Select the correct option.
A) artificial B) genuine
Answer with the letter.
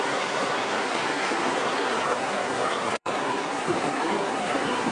A